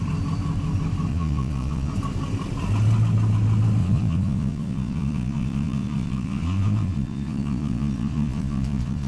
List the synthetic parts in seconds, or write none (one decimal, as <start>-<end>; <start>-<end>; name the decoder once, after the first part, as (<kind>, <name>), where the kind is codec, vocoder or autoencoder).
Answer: 1.1-1.9 (vocoder, Vocos); 3.8-9.1